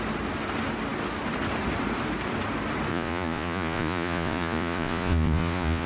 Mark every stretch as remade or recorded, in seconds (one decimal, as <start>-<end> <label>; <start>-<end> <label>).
0.0-2.9 recorded; 2.9-5.9 remade